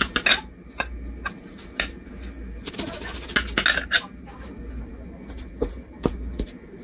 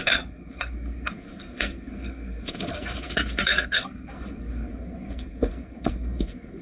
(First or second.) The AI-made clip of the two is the second